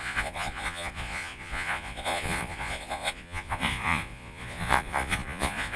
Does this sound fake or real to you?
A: fake